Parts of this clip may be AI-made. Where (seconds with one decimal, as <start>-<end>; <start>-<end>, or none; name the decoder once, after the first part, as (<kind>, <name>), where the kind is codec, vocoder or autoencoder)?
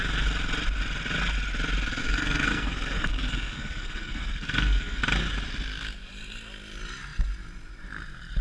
2.0-5.0 (codec, SNAC)